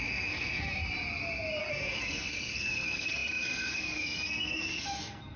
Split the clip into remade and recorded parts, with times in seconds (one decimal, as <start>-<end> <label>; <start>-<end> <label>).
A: 0.0-0.8 remade; 0.8-1.6 recorded; 1.6-5.4 remade